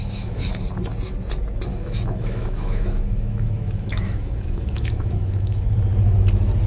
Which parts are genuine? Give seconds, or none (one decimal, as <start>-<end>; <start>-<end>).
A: 0.5-1.7; 5.7-6.7